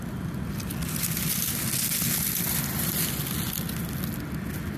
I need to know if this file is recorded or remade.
recorded